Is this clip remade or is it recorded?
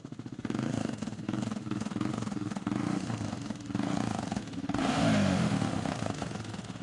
remade